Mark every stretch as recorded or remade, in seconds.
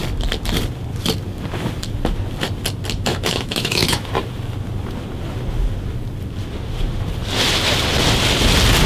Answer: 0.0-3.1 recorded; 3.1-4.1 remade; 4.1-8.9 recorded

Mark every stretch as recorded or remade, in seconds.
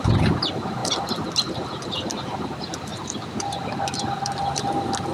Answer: 0.0-2.9 recorded; 2.9-3.6 remade; 3.6-5.1 recorded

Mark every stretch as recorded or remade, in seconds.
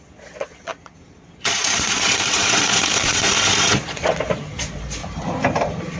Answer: 0.0-5.0 remade; 5.0-6.0 recorded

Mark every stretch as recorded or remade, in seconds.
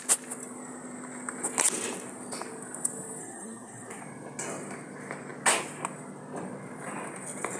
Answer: 0.0-3.2 recorded; 3.2-4.0 remade; 4.0-7.6 recorded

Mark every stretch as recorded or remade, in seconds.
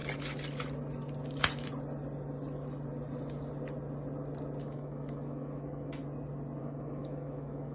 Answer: 0.0-4.6 recorded; 4.6-6.0 remade; 6.0-6.6 recorded; 6.6-7.7 remade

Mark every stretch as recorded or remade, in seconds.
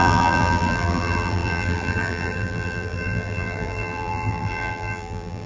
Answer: 0.0-5.5 remade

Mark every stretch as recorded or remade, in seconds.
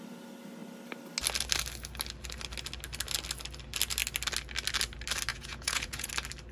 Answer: 0.0-5.3 recorded; 5.3-6.1 remade; 6.1-6.5 recorded